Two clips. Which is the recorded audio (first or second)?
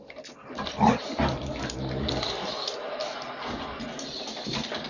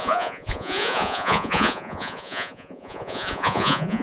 first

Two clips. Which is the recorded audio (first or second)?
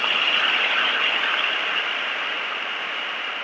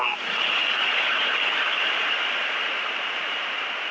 first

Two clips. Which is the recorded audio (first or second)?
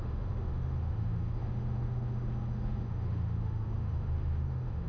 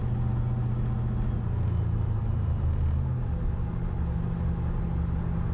second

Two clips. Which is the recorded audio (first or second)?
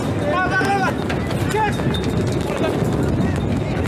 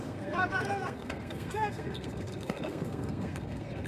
first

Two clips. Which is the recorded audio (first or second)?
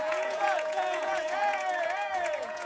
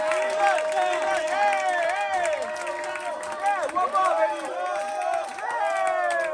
second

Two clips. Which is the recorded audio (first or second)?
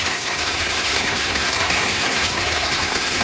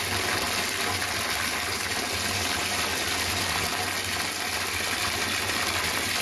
second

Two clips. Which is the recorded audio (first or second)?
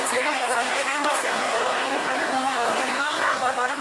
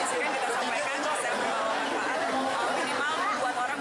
second